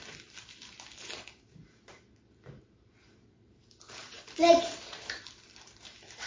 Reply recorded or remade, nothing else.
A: remade